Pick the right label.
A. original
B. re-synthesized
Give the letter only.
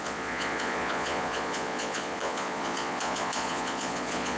B